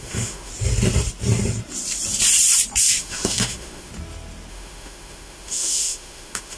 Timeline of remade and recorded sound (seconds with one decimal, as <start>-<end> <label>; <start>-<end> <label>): 0.0-0.5 remade; 0.5-3.0 recorded; 3.0-3.9 remade; 3.9-4.5 recorded; 4.5-6.6 remade